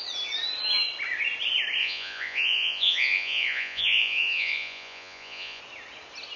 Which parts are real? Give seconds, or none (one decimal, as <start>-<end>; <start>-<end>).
0.0-1.8; 5.6-6.4

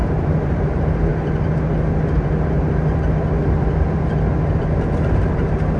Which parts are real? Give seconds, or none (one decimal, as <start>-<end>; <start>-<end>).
1.1-4.6